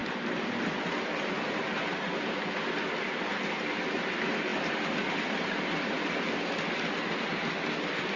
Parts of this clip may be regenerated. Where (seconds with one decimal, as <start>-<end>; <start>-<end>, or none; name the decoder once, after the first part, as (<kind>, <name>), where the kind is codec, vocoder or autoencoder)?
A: none